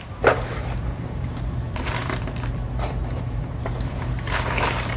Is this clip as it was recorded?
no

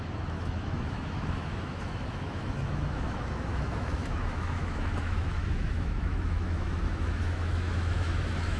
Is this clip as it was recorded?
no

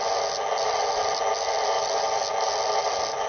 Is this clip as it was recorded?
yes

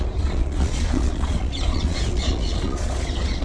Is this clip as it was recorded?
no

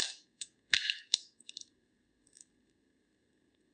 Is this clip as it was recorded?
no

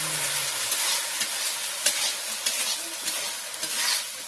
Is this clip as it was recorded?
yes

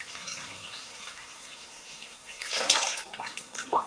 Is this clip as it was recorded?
no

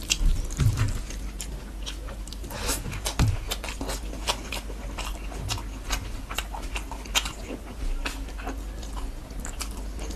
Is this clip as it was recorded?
yes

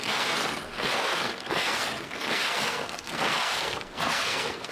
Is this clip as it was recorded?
no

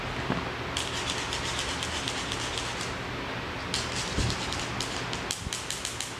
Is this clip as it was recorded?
yes